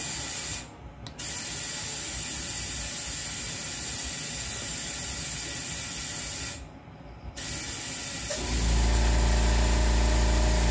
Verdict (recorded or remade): recorded